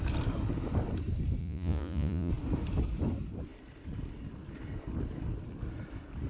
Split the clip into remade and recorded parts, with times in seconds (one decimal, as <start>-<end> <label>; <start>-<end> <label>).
0.0-1.4 recorded; 1.4-2.3 remade; 2.3-6.3 recorded